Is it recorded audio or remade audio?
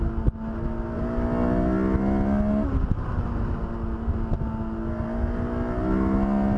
recorded